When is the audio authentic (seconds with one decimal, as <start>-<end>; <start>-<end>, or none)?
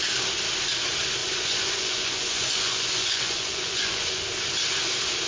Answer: 0.0-1.2; 4.2-5.3